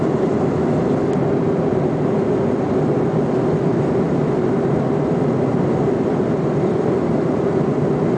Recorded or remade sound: recorded